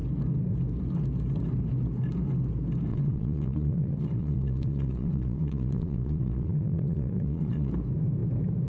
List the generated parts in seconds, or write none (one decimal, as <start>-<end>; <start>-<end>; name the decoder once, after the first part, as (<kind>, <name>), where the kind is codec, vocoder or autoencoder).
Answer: 2.9-7.7 (vocoder, Vocos)